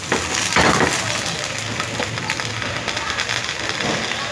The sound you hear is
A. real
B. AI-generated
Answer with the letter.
A